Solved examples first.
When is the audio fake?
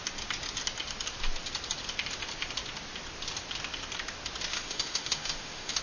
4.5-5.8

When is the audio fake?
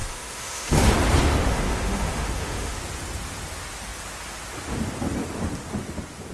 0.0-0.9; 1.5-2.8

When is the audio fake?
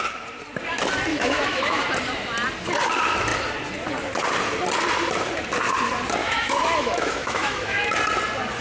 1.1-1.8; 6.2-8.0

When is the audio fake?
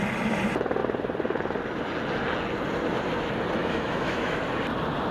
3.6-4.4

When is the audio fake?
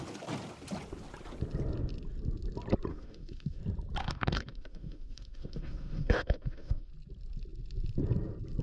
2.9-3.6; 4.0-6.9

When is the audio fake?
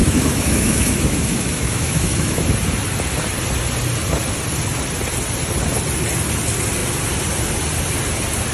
0.0-2.4